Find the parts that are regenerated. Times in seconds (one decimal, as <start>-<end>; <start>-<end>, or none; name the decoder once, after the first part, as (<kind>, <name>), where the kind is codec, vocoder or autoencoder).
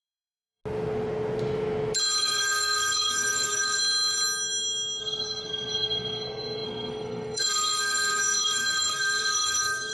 0.0-0.6 (codec, SNAC); 2.2-3.8; 5.0-9.9